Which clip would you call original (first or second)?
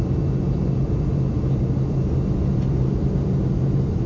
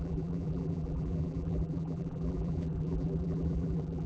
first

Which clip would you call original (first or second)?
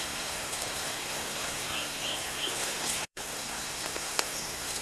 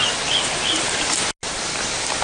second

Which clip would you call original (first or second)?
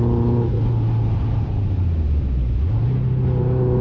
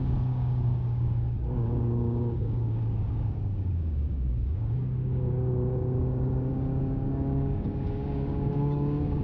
first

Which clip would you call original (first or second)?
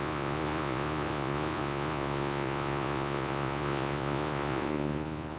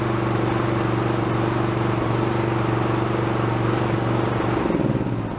second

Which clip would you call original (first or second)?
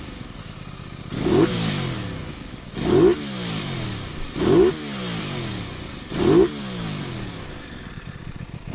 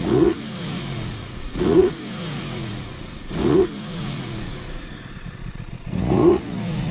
first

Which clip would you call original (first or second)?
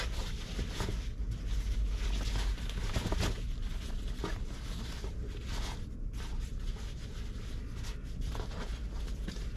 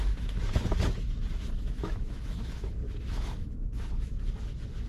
first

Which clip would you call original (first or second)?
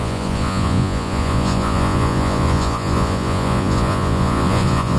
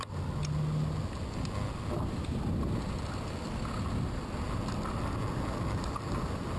second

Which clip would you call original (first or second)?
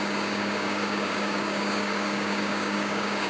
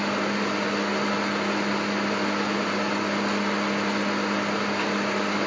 second